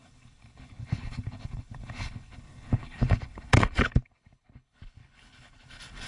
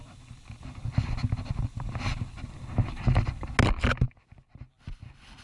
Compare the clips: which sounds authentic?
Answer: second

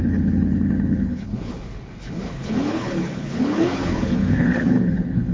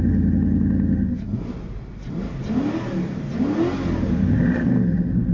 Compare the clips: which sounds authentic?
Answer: second